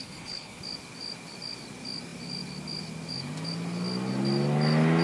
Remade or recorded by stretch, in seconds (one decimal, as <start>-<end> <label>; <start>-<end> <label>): 0.0-0.6 remade; 0.6-5.0 recorded